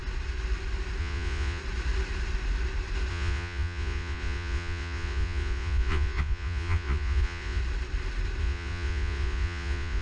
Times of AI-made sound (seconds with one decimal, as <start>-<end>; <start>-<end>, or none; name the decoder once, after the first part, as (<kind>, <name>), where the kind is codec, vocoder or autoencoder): 1.0-1.6 (vocoder, Vocos); 3.1-7.6; 8.4-10.0